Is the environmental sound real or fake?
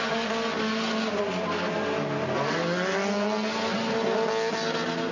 real